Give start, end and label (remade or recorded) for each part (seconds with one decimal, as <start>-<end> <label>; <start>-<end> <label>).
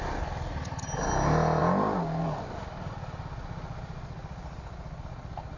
0.0-5.6 recorded